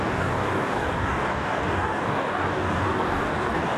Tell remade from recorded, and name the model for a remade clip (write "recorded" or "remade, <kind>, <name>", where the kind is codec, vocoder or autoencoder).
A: remade, codec, DAC